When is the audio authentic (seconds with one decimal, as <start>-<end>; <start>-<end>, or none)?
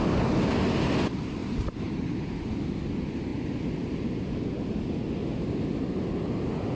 0.0-1.4; 2.3-6.8